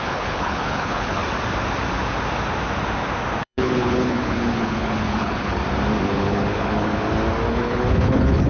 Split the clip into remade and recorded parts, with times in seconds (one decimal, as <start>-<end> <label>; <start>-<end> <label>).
0.0-1.2 remade; 1.2-3.4 recorded; 3.4-5.6 remade; 5.6-6.1 recorded; 6.1-6.9 remade; 6.9-7.5 recorded; 7.5-8.5 remade